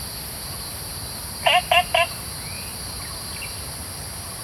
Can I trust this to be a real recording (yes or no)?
yes